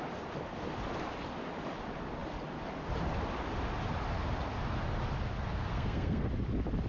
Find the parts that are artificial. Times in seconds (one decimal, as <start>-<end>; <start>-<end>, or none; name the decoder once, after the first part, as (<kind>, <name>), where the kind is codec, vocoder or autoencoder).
5.7-6.3 (codec, SNAC)